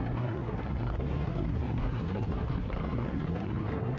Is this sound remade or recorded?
remade